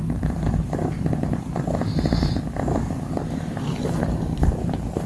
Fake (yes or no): yes